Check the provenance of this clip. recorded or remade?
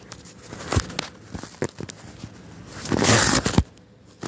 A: recorded